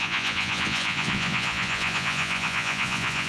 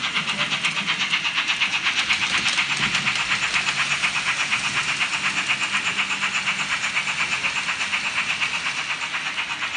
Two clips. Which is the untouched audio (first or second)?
second